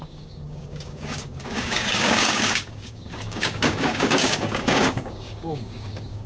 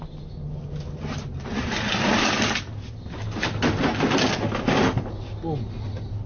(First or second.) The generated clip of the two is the first